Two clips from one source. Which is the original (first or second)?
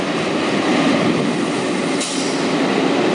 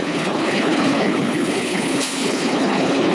first